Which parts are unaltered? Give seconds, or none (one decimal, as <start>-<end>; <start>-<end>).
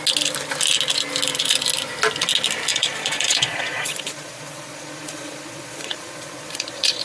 0.0-2.7